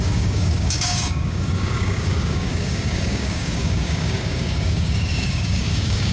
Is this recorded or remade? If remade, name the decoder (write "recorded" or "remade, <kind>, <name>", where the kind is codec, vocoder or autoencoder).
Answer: remade, codec, DAC